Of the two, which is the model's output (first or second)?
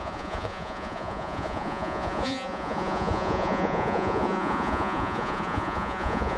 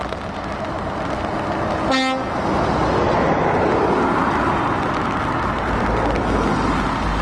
first